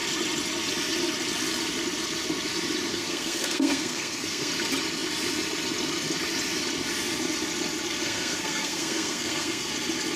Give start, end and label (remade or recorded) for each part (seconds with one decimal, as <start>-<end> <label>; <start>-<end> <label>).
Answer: 0.0-2.9 recorded; 2.9-4.5 remade; 4.5-8.0 recorded; 8.0-9.7 remade; 9.7-10.2 recorded